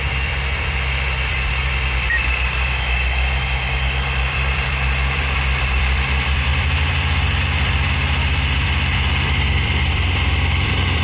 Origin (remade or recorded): remade